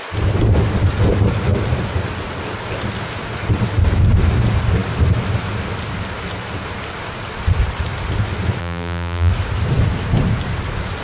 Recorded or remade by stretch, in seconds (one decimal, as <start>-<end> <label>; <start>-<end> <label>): 0.0-8.6 recorded; 8.6-9.3 remade; 9.3-11.0 recorded